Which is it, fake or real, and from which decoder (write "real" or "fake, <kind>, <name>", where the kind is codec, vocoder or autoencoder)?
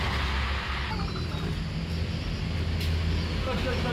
real